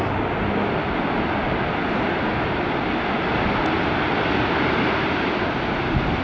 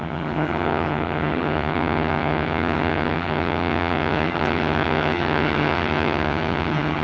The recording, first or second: first